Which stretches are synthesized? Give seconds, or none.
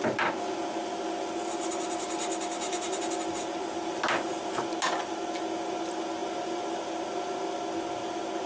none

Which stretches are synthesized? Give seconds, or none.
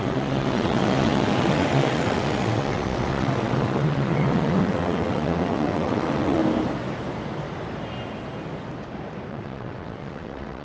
0.0-6.4 (vocoder, WaveNeXt); 9.3-10.6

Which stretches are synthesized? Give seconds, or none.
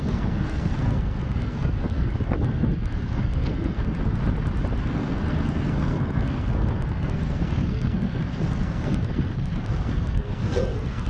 0.0-4.2 (codec, SNAC); 4.8-11.1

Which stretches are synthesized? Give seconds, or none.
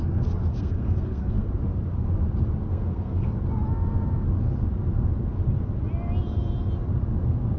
0.5-1.5 (codec, SNAC); 2.7-3.3